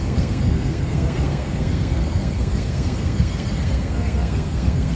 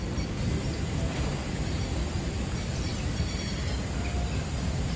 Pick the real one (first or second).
second